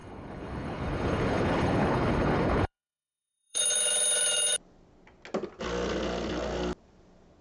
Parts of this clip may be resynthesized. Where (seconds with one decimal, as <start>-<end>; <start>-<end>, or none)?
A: 0.0-3.6